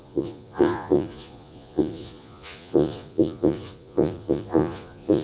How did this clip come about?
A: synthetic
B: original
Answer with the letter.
A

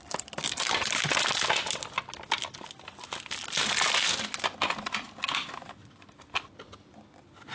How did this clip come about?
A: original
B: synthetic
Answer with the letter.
A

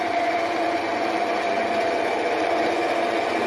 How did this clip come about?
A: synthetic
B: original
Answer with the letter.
A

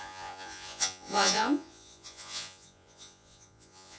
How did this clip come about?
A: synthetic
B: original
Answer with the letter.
A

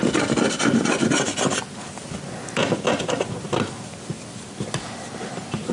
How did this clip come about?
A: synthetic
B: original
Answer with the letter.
B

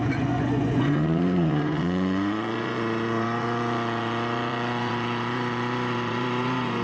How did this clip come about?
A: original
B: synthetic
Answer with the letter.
B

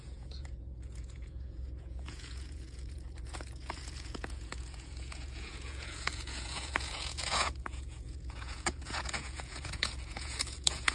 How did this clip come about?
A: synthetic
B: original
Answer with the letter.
A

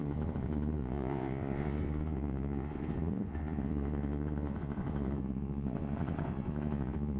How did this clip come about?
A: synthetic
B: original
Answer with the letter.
A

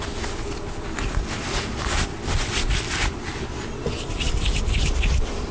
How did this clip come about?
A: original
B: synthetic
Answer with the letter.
A